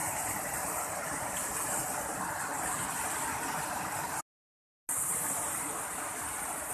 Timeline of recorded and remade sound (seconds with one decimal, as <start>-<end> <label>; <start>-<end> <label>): 0.0-6.7 recorded